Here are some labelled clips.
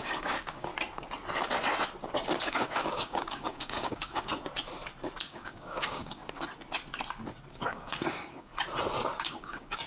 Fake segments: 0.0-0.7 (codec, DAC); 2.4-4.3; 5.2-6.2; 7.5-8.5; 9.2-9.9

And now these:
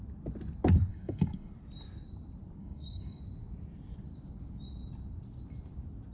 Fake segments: 0.9-1.5 (codec, DAC); 2.6-3.2

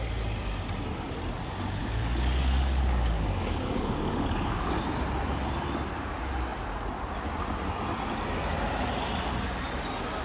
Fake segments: 1.8-4.8 (codec, DAC)

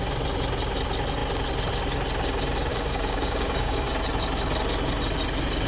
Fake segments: 2.7-3.9 (codec, DAC)

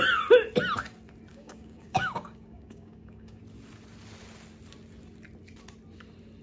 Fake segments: 1.3-3.4 (codec, DAC)